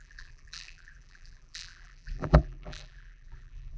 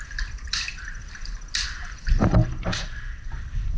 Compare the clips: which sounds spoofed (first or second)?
first